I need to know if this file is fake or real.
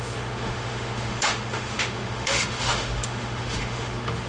fake